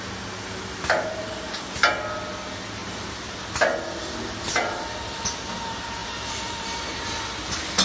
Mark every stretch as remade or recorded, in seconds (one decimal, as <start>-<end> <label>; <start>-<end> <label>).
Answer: 0.0-7.8 recorded